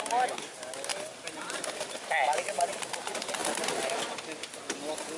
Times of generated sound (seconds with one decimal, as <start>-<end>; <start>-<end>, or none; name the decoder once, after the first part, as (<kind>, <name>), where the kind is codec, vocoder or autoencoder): 0.9-2.8 (vocoder, BigVGAN v2)